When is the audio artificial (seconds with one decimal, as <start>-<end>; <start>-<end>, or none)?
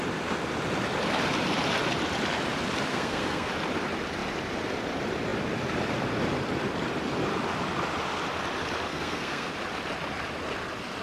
2.9-3.5; 8.9-9.5